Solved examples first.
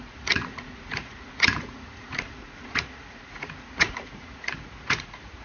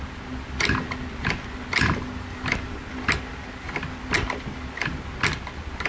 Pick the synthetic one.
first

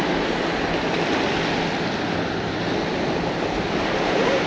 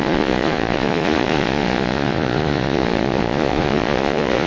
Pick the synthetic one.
second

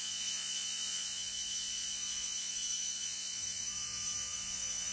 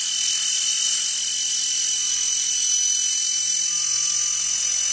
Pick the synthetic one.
first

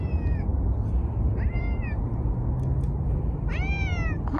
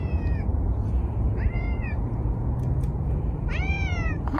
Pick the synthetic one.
second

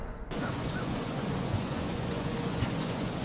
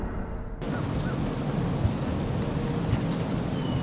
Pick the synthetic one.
first